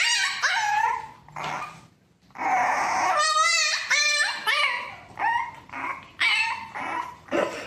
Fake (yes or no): no